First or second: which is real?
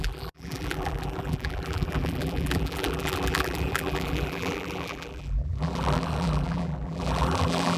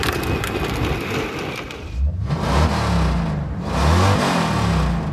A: second